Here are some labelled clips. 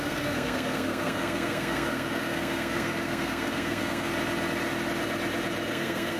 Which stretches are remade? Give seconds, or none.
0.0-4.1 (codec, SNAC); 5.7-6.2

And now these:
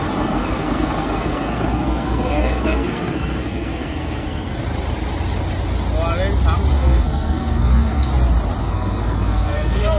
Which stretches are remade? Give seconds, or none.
0.0-4.6 (codec, SNAC); 6.7-8.1; 8.6-10.0

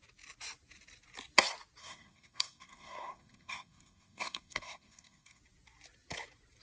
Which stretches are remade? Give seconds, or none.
1.8-5.4 (codec, SNAC)